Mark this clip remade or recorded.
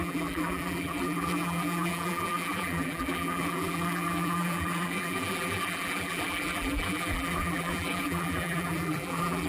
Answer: remade